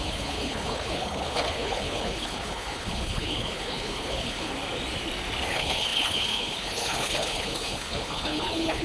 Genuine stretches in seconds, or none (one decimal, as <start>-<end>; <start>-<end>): 4.5-5.5